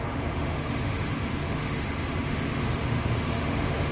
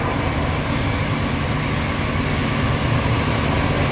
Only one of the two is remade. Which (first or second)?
first